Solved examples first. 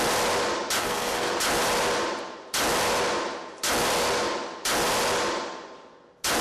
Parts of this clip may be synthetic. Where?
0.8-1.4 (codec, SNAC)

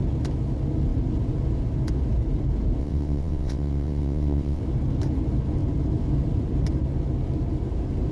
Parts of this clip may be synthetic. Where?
2.8-4.6 (vocoder, WaveNeXt)

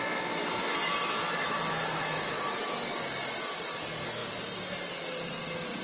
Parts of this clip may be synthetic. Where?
1.4-2.6 (autoencoder, DAC-VAE)

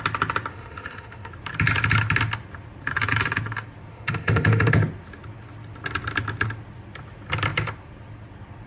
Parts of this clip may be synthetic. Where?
0.5-1.3 (autoencoder, DAC-VAE); 3.9-4.7